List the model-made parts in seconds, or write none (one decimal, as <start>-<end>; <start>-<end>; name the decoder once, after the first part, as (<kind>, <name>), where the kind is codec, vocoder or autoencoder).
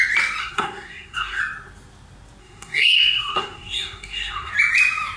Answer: 0.4-1.4 (codec, SNAC); 2.4-4.5